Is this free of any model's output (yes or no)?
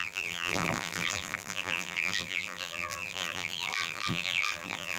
no